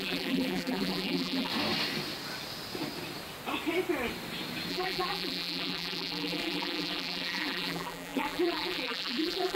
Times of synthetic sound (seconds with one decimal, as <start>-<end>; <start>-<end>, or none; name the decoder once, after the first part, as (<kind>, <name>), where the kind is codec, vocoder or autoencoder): 0.0-1.5 (vocoder, BigVGAN v2); 4.7-9.6